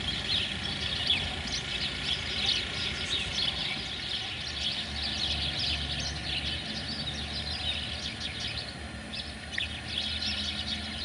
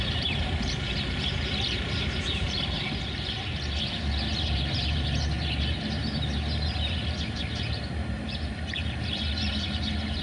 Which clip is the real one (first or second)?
first